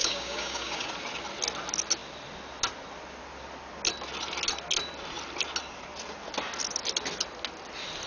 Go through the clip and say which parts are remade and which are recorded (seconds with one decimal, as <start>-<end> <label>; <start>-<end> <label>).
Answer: 0.0-0.9 remade; 0.9-8.1 recorded